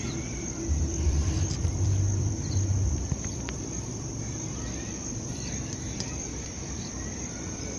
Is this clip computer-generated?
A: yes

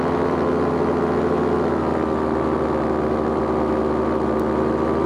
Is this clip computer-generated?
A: no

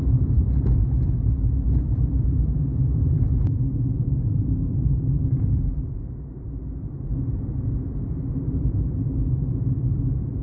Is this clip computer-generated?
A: yes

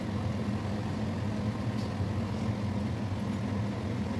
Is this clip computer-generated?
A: no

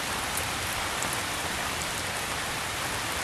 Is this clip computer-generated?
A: yes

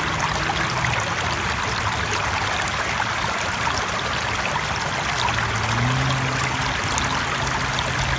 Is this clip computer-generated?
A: no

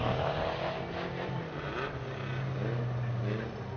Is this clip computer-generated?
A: no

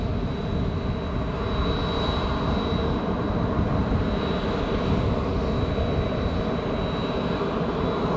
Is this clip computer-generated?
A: no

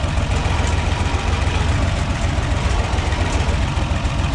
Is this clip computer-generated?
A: yes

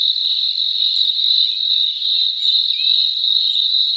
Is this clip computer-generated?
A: no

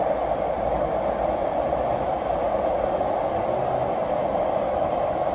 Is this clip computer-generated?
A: yes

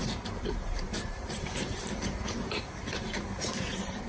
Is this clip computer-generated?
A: yes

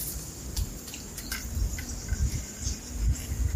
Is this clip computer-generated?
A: yes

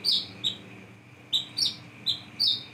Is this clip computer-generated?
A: no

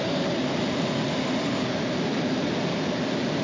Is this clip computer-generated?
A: yes